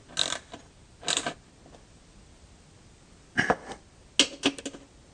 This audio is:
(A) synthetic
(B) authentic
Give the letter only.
B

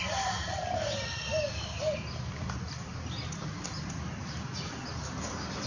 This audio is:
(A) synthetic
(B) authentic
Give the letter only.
A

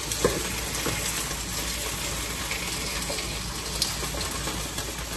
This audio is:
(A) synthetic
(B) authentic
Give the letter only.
B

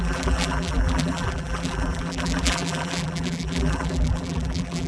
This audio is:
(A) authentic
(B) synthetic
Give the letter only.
B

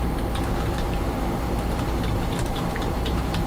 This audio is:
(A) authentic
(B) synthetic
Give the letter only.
B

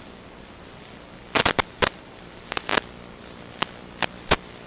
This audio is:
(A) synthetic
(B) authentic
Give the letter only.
A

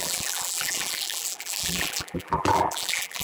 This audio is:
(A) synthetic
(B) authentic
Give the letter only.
A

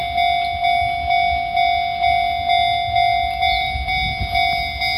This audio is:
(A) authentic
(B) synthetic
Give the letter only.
A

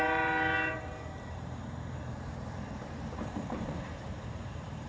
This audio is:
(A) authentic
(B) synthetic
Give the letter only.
B